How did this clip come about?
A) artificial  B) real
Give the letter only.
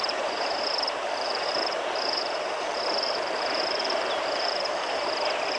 A